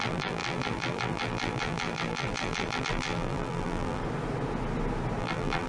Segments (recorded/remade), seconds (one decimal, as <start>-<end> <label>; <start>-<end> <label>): 0.0-4.0 remade; 4.0-5.2 recorded; 5.2-5.7 remade

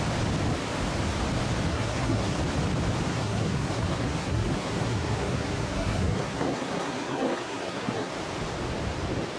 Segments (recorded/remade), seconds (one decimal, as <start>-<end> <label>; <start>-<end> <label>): 0.0-1.7 recorded; 1.7-2.4 remade; 2.4-3.1 recorded; 3.1-8.1 remade; 8.1-9.4 recorded

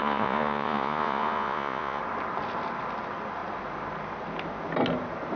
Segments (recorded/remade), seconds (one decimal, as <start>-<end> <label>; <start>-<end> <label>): 0.0-2.0 remade; 2.0-5.4 recorded

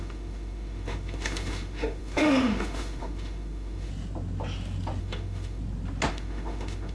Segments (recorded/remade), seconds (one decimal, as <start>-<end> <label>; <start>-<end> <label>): 0.0-3.9 remade; 3.9-5.0 recorded; 5.0-5.6 remade; 5.6-6.1 recorded; 6.1-6.9 remade

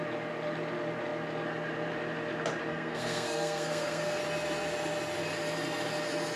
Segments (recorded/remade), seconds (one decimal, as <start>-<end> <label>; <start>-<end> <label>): 0.0-2.7 recorded; 2.7-4.2 remade; 4.2-6.4 recorded

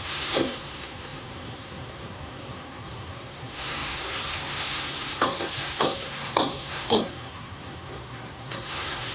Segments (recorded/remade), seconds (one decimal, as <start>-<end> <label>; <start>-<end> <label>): 0.0-9.1 remade

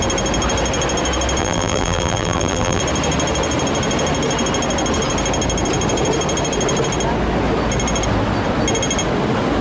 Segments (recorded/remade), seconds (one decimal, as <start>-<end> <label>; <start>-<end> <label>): 0.0-1.4 recorded; 1.4-2.8 remade; 2.8-9.6 recorded

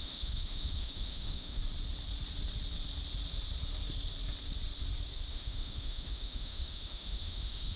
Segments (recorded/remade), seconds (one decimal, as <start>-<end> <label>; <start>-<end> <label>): 0.0-1.6 remade; 1.6-5.3 recorded; 5.3-7.8 remade